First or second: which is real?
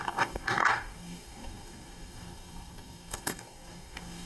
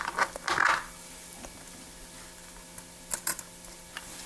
second